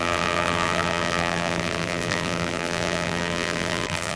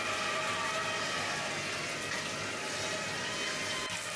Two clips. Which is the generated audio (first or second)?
first